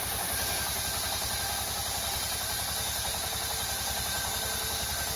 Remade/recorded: remade